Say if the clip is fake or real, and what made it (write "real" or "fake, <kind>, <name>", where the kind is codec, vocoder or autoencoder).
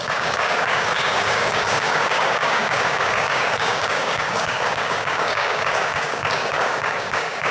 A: fake, codec, DAC